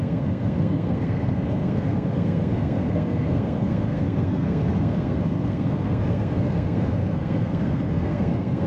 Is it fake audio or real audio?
fake